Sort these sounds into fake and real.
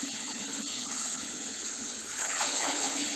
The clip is fake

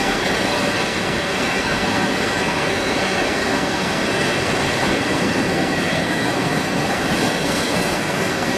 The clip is fake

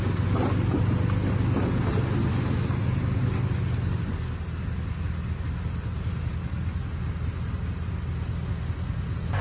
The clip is real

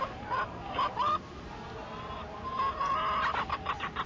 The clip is real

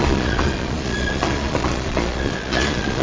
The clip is fake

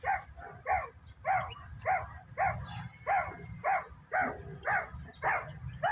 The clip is real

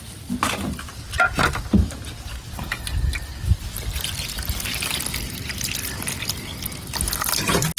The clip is real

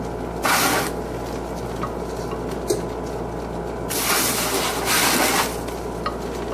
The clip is real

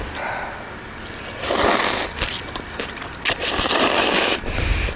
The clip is fake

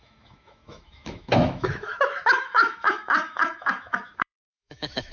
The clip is fake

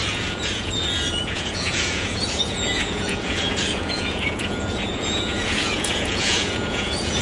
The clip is fake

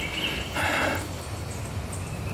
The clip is real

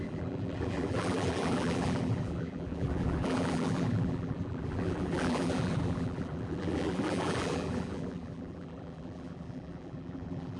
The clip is fake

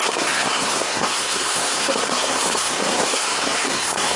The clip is fake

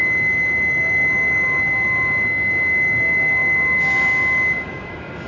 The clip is fake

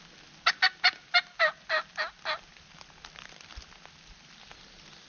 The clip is real